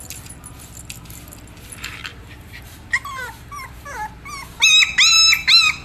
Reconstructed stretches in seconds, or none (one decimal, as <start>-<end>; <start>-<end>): 2.1-3.7